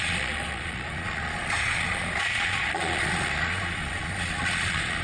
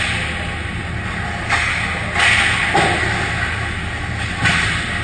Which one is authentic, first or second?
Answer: second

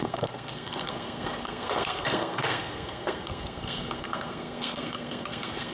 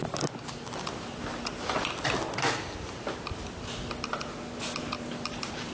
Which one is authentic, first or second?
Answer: second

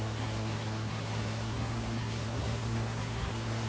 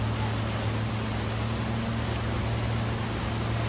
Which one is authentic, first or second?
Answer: second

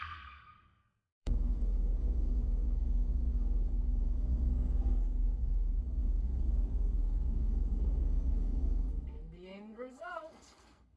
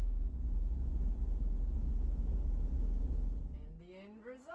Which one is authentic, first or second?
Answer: second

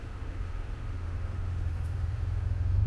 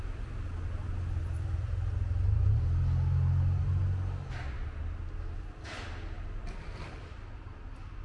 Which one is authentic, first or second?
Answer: second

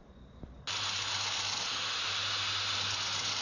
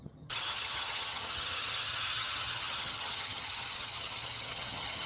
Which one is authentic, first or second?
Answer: first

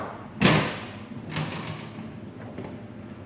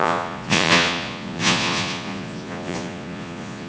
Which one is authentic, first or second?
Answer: first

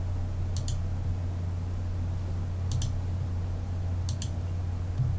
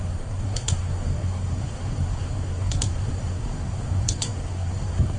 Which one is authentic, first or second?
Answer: first